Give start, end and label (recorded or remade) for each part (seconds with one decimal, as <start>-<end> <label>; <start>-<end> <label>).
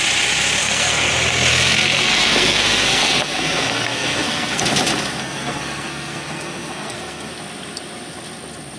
0.0-0.6 recorded; 0.6-1.1 remade; 1.1-1.5 recorded; 1.5-4.6 remade; 4.6-5.2 recorded; 5.2-7.3 remade; 7.3-8.8 recorded